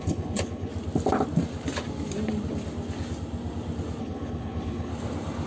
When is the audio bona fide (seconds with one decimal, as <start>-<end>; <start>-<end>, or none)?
0.7-4.0; 4.9-5.5